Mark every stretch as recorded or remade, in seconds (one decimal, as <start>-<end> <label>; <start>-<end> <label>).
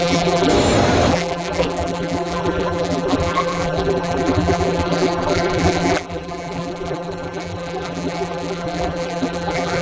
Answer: 0.0-0.5 remade; 0.5-1.1 recorded; 1.1-9.8 remade